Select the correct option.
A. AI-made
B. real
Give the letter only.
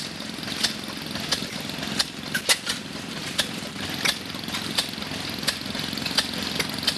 B